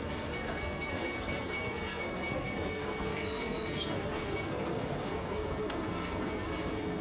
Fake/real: fake